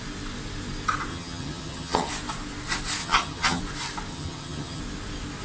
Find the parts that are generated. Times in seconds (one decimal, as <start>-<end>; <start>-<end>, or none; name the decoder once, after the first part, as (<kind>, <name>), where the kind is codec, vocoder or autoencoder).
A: 1.1-2.1 (vocoder, HiFi-GAN); 3.0-3.6; 4.1-4.8

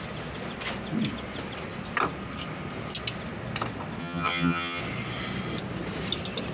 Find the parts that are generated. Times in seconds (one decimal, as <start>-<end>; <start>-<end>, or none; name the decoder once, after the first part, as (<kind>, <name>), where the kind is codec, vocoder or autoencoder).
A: 4.0-4.8 (vocoder, HiFi-GAN)

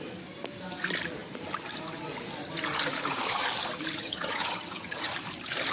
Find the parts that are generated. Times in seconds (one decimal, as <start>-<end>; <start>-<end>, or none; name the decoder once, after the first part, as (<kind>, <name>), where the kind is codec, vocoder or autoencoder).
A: 4.0-5.1 (vocoder, HiFi-GAN)

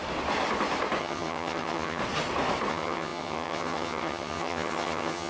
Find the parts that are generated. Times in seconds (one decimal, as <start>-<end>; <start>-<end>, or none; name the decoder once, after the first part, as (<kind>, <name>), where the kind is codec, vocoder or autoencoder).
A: 1.0-2.0 (vocoder, HiFi-GAN); 2.7-5.3

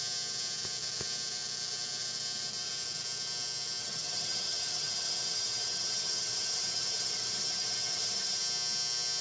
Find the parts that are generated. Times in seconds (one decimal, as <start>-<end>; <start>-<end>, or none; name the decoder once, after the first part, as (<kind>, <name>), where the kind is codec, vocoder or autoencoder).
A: 3.8-8.4 (vocoder, HiFi-GAN)

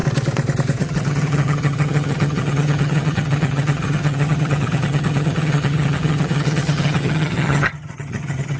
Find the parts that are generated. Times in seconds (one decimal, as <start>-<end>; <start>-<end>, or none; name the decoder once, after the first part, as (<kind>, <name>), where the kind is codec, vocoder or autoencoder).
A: 0.8-8.6 (vocoder, HiFi-GAN)

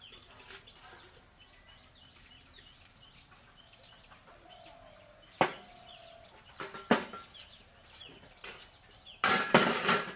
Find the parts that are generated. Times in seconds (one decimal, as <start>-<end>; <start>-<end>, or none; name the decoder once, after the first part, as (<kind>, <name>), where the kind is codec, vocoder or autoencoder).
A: none

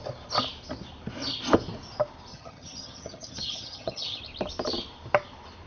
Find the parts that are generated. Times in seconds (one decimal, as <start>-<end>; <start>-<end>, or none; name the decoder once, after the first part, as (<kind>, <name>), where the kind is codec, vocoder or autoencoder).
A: 2.3-4.2 (vocoder, HiFi-GAN)